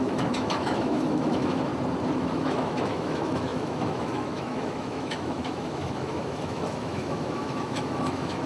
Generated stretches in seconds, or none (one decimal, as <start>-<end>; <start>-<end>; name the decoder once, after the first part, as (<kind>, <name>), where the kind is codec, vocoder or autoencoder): 0.0-1.7 (autoencoder, DAC-VAE); 2.2-8.5